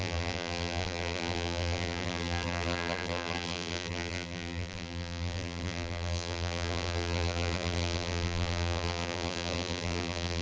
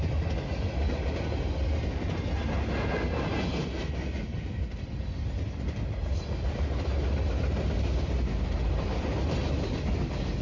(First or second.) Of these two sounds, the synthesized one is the first